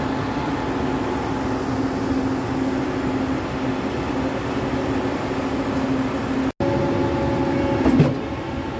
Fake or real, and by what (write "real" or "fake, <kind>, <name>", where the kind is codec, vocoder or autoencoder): real